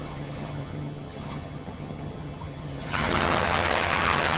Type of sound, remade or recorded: remade